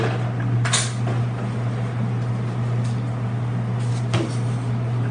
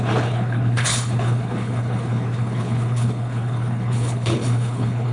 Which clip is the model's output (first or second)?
second